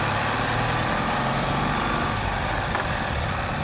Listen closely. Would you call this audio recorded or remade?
recorded